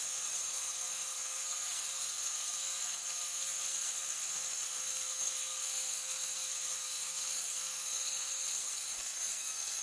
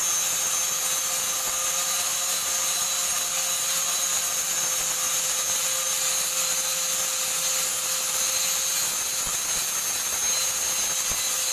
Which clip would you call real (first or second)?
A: second